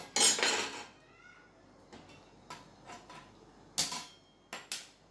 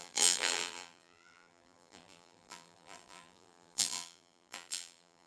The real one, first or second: first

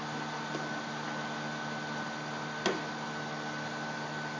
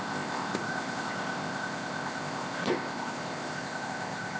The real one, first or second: first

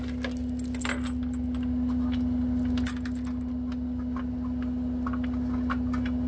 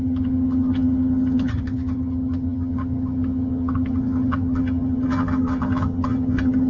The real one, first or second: first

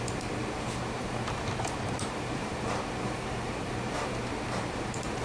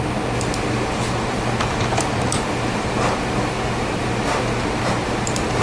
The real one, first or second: second